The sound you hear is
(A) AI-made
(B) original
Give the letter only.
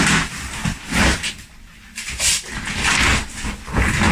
B